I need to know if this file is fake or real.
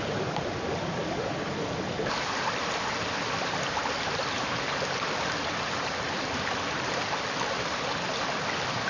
real